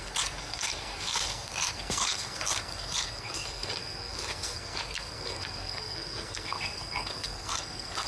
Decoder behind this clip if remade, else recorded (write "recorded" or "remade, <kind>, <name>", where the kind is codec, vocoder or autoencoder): remade, codec, SNAC